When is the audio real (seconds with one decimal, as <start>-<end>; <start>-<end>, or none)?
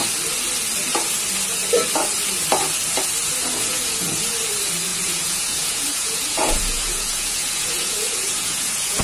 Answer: 0.0-3.4; 4.3-4.9